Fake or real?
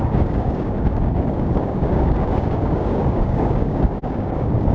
fake